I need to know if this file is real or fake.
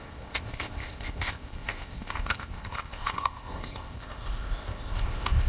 fake